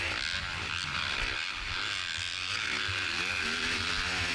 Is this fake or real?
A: real